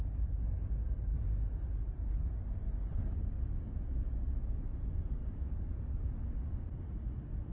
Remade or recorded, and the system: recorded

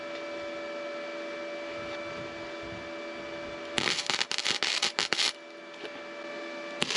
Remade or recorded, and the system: recorded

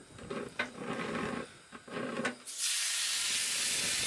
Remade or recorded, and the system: recorded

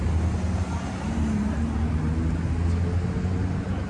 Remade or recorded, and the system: recorded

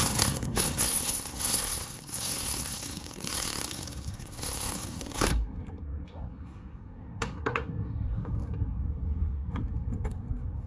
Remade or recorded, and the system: remade, codec, SNAC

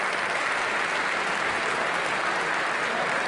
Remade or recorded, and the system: recorded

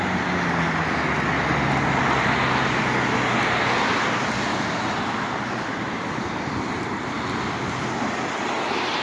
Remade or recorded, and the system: recorded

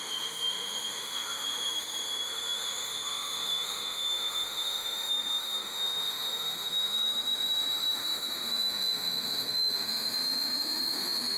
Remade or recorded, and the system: remade, autoencoder, DAC-VAE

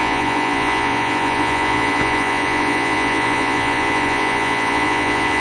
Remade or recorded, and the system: remade, vocoder, Vocos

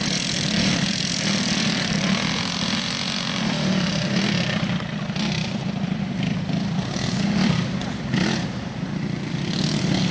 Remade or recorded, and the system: remade, vocoder, BigVGAN v2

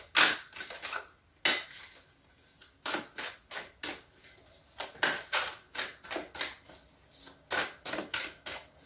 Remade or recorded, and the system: recorded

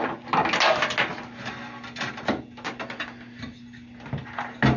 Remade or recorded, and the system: recorded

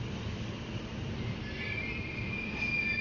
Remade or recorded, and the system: recorded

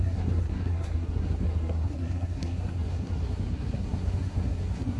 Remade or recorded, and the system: remade, codec, SNAC